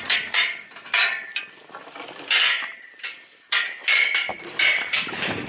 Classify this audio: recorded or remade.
remade